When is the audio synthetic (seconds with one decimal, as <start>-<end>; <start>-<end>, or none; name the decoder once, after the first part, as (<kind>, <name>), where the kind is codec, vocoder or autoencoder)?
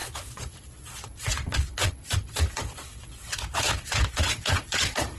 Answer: 0.0-5.2 (vocoder, Vocos)